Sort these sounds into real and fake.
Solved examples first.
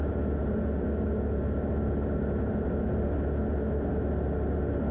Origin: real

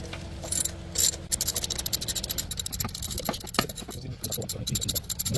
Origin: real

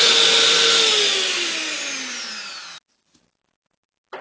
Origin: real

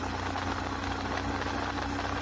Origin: real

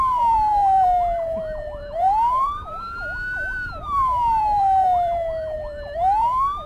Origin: fake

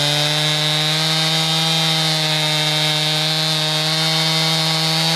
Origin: real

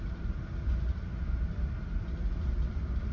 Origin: real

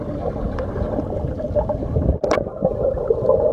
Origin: real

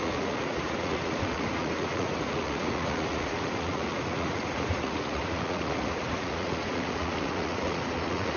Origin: fake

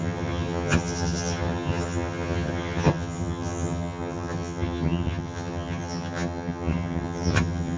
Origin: fake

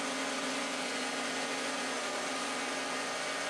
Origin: fake